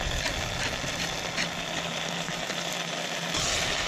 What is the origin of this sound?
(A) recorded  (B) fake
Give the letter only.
A